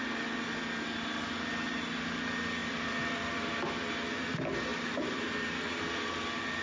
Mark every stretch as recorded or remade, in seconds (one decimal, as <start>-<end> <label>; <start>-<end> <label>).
0.0-2.6 recorded; 2.6-3.5 remade; 3.5-4.7 recorded; 4.7-5.8 remade; 5.8-6.6 recorded